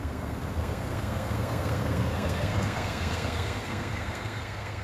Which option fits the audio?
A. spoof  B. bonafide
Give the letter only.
A